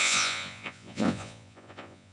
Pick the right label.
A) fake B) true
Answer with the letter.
A